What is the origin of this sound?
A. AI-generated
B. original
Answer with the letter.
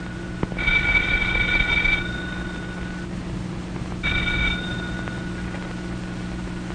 B